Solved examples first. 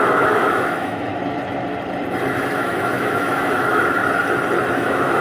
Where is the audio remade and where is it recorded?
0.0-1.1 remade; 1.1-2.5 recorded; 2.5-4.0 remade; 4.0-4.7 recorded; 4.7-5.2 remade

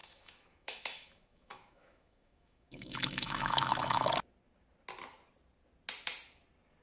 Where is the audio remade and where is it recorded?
0.0-4.1 remade; 4.1-6.8 recorded

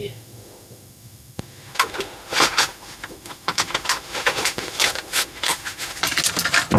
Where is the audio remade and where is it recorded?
0.0-6.0 remade; 6.0-6.8 recorded